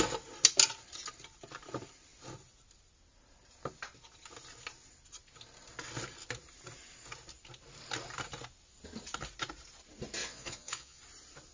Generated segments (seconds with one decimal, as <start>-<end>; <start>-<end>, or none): 10.2-11.0